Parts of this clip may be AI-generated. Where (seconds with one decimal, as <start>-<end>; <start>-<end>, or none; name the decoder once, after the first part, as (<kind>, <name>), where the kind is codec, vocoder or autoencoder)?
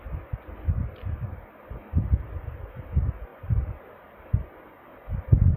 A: none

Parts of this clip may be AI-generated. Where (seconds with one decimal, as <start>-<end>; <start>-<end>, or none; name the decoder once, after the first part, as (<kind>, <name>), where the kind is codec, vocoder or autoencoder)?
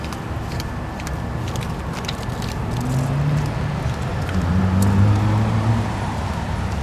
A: none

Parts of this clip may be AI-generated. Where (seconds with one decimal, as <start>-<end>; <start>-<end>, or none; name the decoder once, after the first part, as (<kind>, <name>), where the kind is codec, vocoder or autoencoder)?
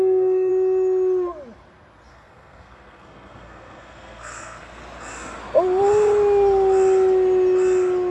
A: 0.0-0.5 (codec, SNAC); 2.1-4.8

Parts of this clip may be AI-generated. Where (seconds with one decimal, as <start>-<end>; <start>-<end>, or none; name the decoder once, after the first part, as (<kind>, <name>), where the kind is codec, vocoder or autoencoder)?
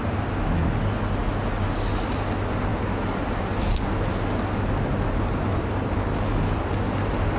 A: none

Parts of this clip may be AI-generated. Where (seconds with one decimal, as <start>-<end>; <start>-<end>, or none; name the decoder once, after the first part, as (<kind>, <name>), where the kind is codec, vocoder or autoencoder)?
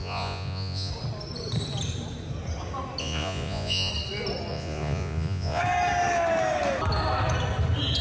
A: 0.0-0.9 (vocoder, Vocos); 3.0-3.9; 4.5-5.6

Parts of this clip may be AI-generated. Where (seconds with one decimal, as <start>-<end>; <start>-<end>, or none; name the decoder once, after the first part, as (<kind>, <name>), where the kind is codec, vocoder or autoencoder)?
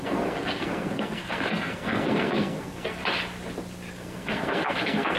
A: 0.0-3.0 (codec, SNAC); 3.9-5.2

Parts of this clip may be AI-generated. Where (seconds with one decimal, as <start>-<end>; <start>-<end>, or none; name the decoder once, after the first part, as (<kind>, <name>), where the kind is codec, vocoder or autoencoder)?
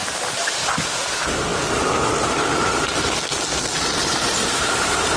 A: 0.0-0.7 (vocoder, BigVGAN v2); 4.0-5.2